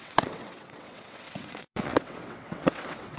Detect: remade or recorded remade